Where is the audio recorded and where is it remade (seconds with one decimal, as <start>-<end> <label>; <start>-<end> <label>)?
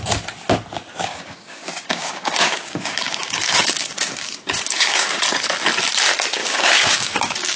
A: 0.0-0.9 recorded; 0.9-5.2 remade; 5.2-6.4 recorded; 6.4-7.6 remade